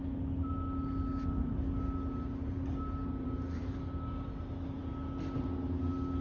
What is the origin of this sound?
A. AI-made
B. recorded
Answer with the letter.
B